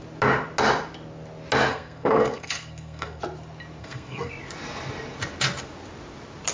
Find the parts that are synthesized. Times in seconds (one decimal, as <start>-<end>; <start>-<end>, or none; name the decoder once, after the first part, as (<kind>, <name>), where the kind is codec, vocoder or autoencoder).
1.7-3.2 (codec, SNAC); 3.8-4.3